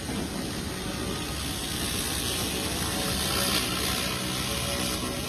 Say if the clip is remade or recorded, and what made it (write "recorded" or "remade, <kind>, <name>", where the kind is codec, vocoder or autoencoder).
recorded